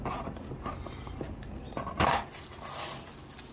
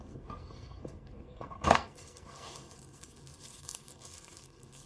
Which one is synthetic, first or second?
second